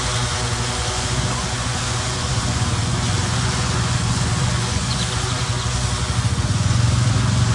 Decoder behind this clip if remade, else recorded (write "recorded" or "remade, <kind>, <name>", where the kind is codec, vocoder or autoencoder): remade, vocoder, Vocos